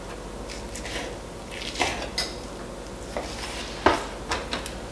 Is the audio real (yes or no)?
yes